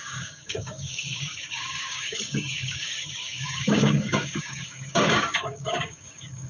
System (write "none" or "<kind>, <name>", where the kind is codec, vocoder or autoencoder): codec, DAC